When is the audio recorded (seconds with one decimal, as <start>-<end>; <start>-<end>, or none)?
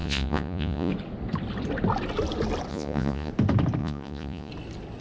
0.9-2.7; 3.3-3.8; 4.5-5.0